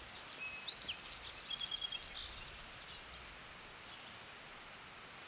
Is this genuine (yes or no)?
yes